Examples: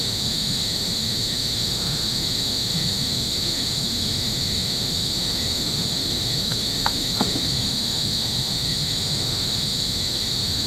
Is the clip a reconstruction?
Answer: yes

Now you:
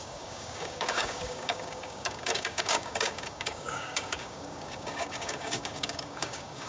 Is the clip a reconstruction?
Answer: yes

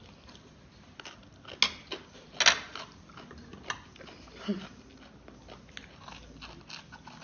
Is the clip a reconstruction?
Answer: no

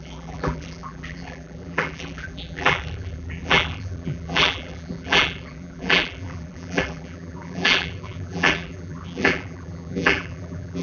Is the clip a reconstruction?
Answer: yes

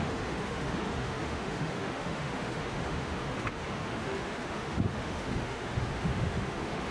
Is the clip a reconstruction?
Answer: yes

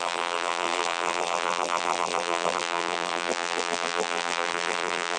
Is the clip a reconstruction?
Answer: yes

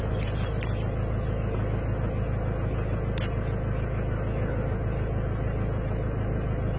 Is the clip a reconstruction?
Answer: no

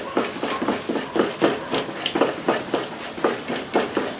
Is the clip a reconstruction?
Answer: no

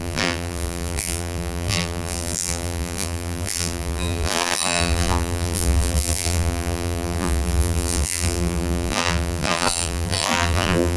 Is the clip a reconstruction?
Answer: yes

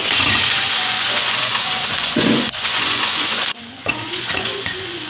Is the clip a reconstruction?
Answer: yes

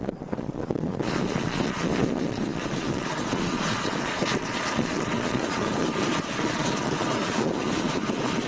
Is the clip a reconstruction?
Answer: yes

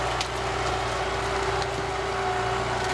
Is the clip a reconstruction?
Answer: no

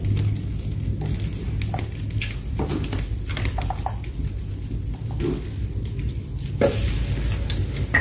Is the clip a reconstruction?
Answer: no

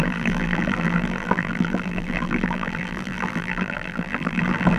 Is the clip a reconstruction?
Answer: yes